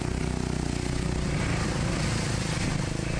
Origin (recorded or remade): recorded